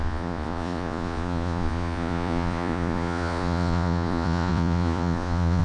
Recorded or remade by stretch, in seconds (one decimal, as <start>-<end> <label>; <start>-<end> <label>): 0.0-5.6 remade